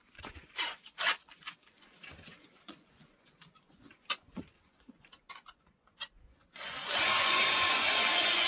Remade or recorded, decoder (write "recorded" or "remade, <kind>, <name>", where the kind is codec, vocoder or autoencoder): remade, vocoder, Vocos